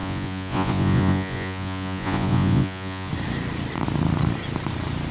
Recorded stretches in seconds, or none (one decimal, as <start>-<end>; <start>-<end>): 3.1-5.1